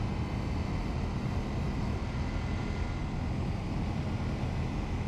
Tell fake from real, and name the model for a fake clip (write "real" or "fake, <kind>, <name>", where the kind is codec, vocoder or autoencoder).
real